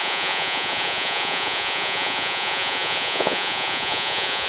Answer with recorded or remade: remade